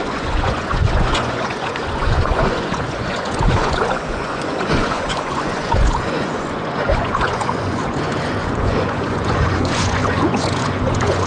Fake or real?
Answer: fake